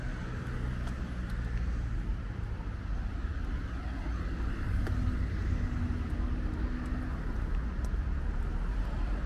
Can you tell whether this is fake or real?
real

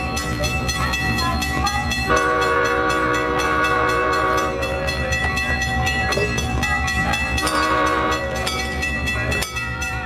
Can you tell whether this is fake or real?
fake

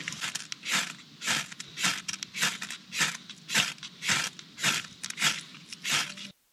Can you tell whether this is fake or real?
real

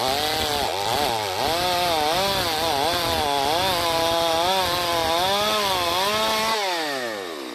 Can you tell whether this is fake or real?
real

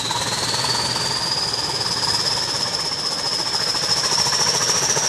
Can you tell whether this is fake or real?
fake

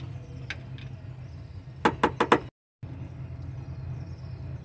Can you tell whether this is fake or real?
real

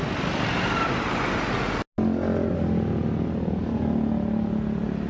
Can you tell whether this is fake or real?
real